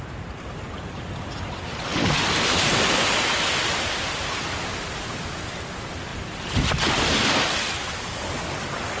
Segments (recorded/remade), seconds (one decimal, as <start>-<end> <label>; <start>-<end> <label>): 0.0-9.0 recorded

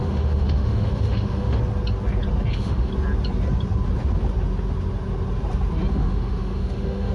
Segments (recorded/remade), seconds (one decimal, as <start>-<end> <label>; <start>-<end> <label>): 0.0-1.6 remade; 1.6-2.5 recorded; 2.5-2.9 remade; 2.9-5.9 recorded; 5.9-7.1 remade